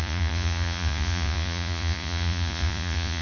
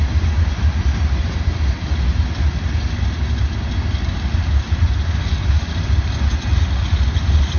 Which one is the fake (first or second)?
first